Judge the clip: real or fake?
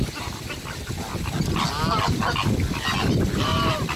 real